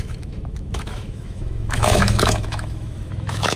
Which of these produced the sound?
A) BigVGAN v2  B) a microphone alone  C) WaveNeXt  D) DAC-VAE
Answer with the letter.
D